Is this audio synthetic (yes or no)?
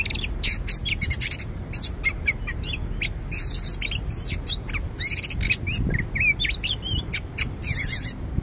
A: no